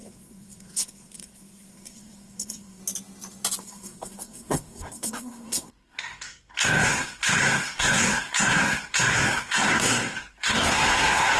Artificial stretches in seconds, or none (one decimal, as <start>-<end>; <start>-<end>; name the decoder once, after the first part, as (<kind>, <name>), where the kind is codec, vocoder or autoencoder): 0.0-2.8 (codec, SNAC); 3.6-11.4